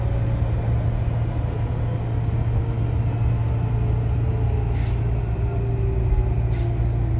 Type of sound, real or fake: real